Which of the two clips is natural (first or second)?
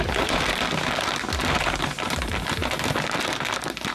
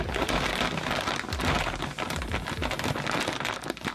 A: second